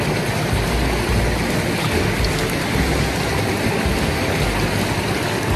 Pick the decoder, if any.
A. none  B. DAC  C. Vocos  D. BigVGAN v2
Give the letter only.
A